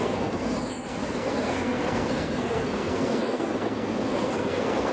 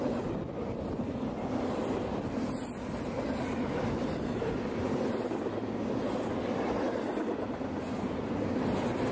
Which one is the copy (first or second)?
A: first